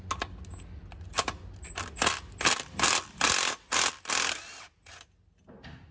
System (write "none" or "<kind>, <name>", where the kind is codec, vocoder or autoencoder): none